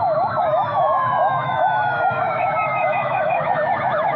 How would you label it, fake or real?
fake